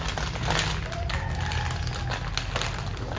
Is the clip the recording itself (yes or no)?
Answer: yes